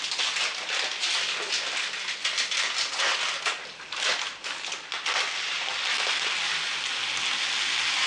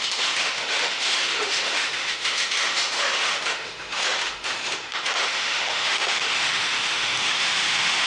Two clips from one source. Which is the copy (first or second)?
second